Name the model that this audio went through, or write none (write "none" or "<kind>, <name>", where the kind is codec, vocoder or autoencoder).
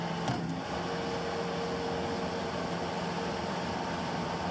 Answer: none